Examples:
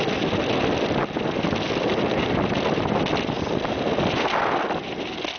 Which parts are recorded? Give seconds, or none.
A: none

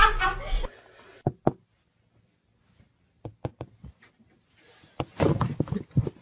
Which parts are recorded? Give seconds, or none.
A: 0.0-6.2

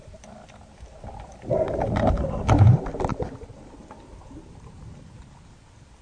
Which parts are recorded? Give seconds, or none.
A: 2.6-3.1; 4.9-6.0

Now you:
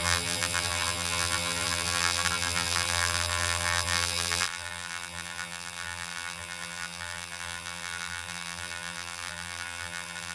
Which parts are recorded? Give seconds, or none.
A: none

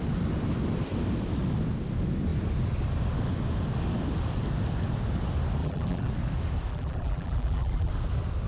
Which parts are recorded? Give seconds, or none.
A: 0.0-5.6; 6.1-6.7; 7.9-8.5

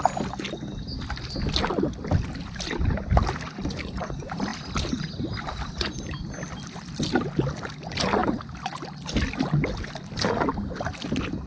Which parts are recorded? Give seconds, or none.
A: 0.0-4.5; 5.4-8.2; 9.0-11.5